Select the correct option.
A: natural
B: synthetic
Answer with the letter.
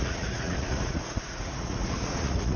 B